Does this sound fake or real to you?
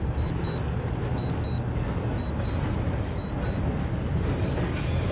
real